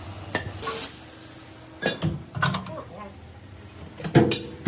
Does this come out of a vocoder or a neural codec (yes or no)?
no